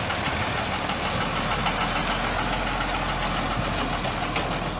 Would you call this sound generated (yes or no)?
no